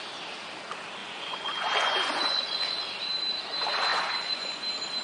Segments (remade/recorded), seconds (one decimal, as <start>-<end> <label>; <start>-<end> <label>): 0.0-1.0 recorded; 1.0-2.8 remade; 2.8-3.9 recorded; 3.9-4.6 remade; 4.6-5.0 recorded